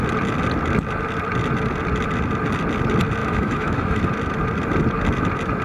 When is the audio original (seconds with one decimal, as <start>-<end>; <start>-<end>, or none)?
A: 0.0-3.2; 4.0-5.6